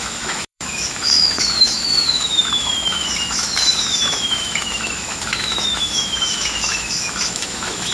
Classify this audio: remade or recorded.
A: remade